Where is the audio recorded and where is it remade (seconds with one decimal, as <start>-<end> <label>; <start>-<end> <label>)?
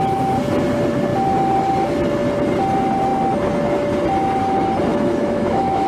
0.0-4.9 recorded; 4.9-5.9 remade